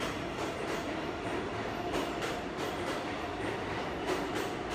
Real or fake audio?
real